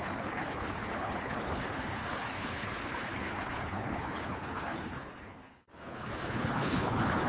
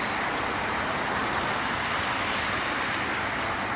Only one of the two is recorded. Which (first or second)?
second